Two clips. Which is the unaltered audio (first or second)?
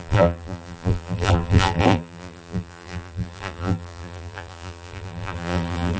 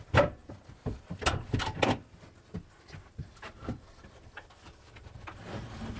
second